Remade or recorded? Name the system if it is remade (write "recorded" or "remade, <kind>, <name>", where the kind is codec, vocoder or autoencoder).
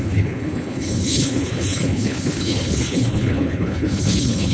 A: remade, codec, HILCodec